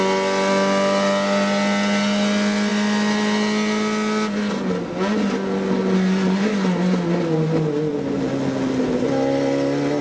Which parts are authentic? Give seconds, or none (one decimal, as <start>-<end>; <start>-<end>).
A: 0.0-10.0